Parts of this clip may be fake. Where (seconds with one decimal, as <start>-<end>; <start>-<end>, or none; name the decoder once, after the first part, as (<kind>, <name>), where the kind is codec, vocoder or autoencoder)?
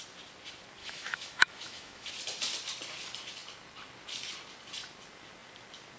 0.8-2.1 (autoencoder, DAC-VAE)